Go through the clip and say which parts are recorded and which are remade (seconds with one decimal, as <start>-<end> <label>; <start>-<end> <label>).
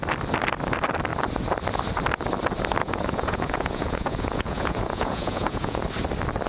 0.0-2.8 recorded; 2.8-5.8 remade; 5.8-6.5 recorded